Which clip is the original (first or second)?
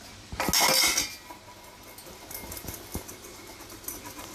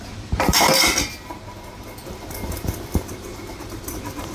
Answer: first